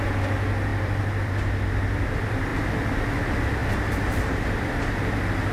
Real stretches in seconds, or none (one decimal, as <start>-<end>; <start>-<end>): 0.0-0.7; 1.3-2.5; 3.2-5.5